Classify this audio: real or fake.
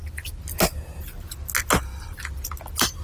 real